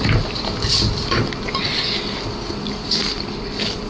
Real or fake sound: real